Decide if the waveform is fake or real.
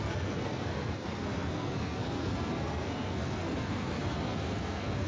fake